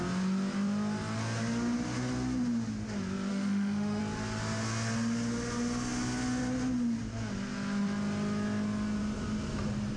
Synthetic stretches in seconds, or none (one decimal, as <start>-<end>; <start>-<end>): 3.3-4.0